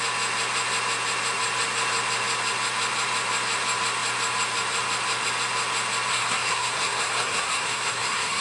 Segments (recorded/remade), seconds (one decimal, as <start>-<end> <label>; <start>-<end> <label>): 0.0-6.1 recorded; 6.1-8.4 remade